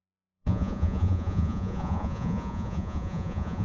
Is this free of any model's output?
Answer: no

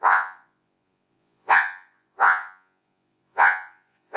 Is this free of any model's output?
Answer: no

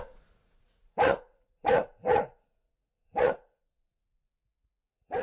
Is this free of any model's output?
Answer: no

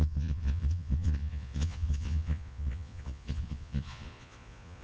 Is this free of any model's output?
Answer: no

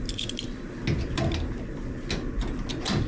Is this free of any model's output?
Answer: yes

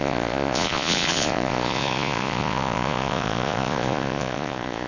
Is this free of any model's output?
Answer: no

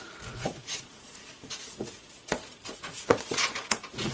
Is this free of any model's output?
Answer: no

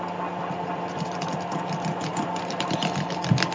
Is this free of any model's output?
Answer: yes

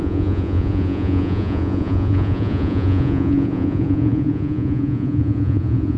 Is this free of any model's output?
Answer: no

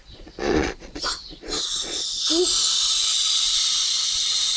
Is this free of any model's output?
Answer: no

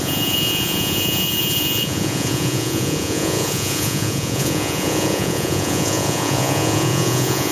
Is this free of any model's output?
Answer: no